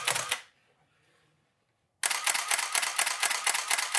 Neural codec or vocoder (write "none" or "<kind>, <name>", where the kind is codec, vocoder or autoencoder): none